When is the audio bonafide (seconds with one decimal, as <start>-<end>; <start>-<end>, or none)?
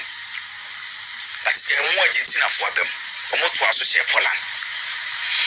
0.6-1.5